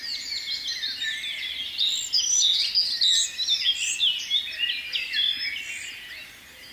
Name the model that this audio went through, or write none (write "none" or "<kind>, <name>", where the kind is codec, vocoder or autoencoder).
none